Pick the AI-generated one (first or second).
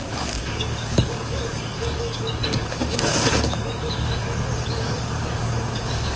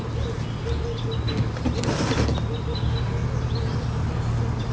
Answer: first